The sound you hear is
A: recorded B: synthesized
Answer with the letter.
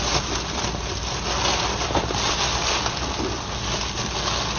A